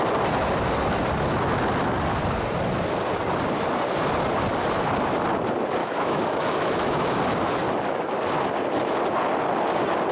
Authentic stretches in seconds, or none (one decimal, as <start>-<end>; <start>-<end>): 0.0-5.8; 7.2-10.1